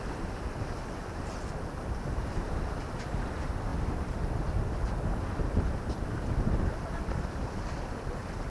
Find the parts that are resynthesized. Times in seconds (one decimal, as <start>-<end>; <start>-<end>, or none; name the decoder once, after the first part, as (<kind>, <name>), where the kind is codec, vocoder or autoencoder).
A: none